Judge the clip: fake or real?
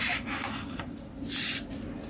real